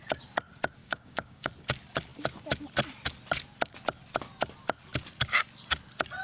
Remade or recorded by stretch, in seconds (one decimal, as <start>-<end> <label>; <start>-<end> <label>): 0.0-0.8 recorded; 0.8-1.5 remade; 1.5-6.2 recorded